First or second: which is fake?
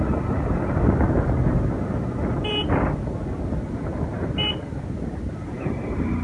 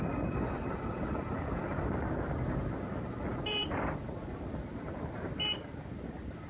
second